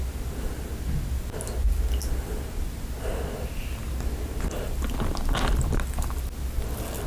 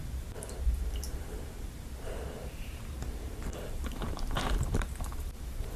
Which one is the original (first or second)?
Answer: first